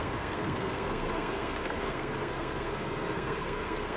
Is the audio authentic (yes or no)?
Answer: no